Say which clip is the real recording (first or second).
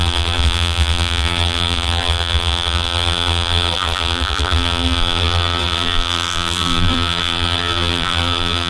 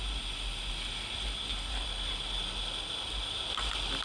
second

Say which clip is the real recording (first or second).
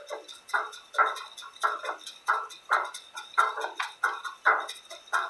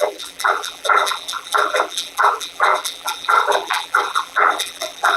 first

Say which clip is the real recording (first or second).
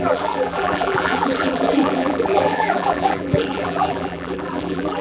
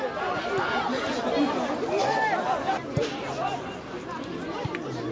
second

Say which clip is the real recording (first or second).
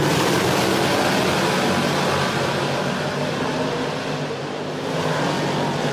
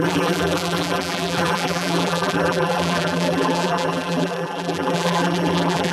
first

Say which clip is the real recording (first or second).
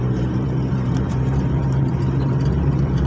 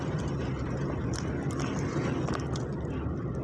second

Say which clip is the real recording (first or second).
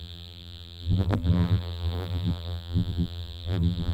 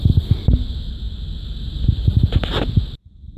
second